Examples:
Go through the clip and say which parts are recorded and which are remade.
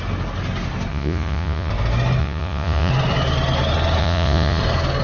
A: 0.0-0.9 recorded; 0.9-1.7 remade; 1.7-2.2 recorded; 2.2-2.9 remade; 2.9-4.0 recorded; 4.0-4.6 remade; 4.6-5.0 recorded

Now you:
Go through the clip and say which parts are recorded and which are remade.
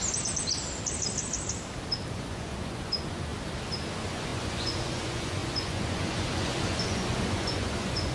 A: 0.0-2.1 recorded; 2.1-3.3 remade; 3.3-3.9 recorded; 3.9-8.1 remade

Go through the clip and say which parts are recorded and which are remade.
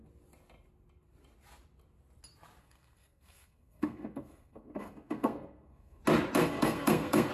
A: 0.0-2.6 recorded; 2.6-6.0 remade; 6.0-6.4 recorded; 6.4-7.3 remade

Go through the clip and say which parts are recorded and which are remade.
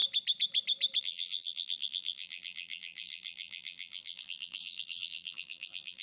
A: 0.0-1.0 recorded; 1.0-6.0 remade